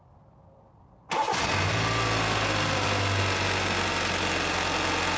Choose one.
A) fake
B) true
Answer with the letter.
B